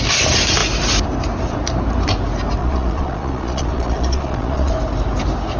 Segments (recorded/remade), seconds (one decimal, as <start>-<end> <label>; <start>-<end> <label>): 0.0-2.6 recorded; 2.6-4.7 remade; 4.7-5.6 recorded